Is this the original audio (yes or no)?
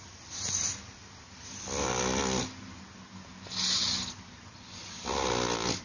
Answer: yes